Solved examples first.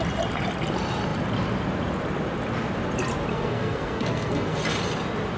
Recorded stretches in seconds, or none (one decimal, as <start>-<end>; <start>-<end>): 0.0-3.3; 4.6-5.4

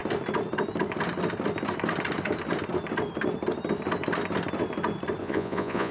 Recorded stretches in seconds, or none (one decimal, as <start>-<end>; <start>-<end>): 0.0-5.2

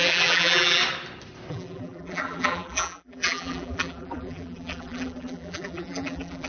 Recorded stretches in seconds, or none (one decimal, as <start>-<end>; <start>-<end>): 0.8-1.5

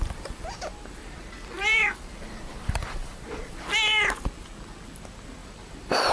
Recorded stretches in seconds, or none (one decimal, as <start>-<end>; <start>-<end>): 0.0-1.0; 3.4-5.4

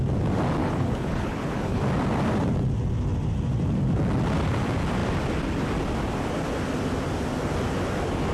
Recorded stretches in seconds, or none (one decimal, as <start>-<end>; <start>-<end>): 0.0-0.6; 1.8-8.3

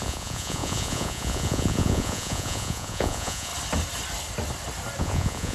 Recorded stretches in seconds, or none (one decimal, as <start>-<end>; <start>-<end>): 3.5-5.0

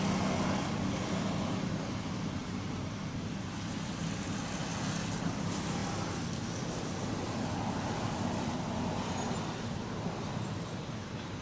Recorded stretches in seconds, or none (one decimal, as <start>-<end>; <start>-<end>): 0.0-2.4; 3.3-11.4